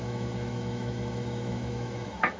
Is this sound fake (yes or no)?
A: yes